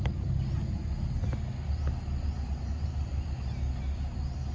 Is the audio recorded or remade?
recorded